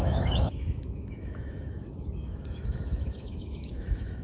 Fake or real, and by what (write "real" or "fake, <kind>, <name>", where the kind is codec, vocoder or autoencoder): fake, autoencoder, DAC-VAE